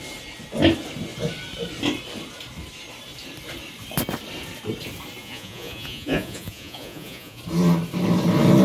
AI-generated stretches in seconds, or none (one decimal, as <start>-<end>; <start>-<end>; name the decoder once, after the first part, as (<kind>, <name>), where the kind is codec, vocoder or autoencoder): 5.2-7.4 (vocoder, Vocos)